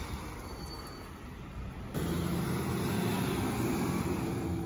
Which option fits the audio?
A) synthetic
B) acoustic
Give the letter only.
B